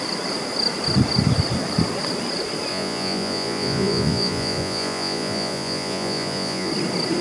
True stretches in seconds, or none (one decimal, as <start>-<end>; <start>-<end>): 0.0-2.7; 6.7-7.2

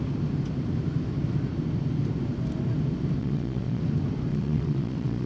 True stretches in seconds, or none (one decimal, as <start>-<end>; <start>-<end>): 0.0-3.2; 3.8-4.3

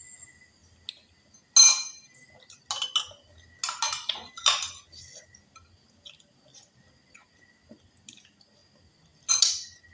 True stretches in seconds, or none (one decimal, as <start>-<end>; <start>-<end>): 0.0-9.9